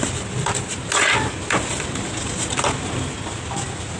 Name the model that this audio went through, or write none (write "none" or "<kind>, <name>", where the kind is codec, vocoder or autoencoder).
none